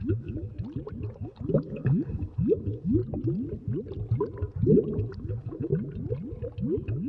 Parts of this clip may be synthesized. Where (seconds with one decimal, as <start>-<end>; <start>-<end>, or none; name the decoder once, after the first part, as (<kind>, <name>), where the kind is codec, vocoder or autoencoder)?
0.0-0.5 (codec, HILCodec); 1.2-3.0; 5.1-5.7